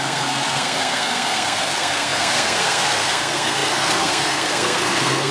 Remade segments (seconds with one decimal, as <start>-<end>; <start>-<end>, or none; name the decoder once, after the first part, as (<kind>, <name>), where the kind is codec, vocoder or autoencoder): 0.0-5.3 (codec, SNAC)